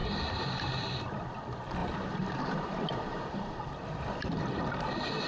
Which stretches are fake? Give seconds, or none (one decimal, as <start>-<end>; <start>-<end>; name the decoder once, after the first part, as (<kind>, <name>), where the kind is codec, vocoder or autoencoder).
1.8-4.4 (vocoder, BigVGAN v2)